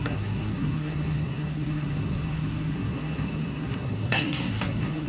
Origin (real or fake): fake